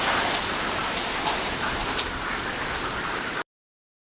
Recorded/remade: recorded